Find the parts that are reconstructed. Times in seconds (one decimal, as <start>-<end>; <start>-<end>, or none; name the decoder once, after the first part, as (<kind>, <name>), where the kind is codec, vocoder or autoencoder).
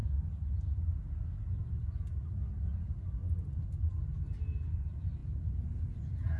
none